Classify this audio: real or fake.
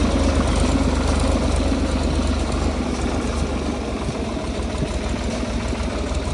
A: real